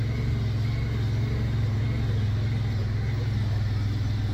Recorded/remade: recorded